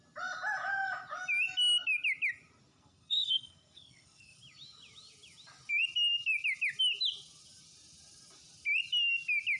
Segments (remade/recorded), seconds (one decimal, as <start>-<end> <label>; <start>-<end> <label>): 0.0-2.7 recorded; 2.7-4.4 remade; 4.4-9.6 recorded